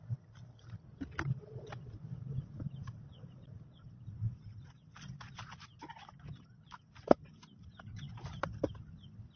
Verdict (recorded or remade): recorded